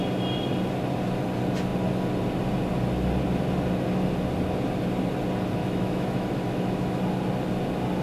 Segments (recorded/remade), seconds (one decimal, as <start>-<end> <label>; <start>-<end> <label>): 0.0-5.6 recorded; 5.6-7.0 remade; 7.0-8.0 recorded